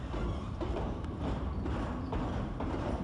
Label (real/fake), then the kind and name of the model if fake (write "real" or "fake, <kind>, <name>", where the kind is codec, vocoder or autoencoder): fake, vocoder, BigVGAN v2